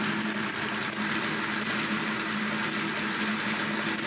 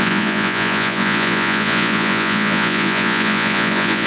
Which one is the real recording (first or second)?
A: first